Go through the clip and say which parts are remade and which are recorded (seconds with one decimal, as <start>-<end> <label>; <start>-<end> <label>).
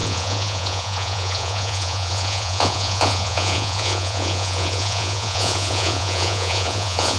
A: 0.0-7.2 remade